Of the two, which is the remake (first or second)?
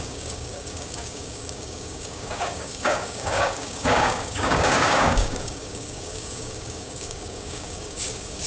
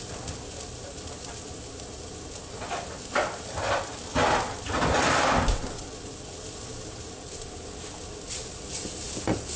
first